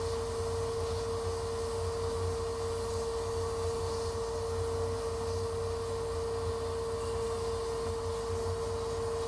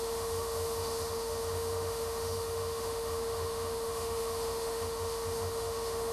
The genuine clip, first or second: first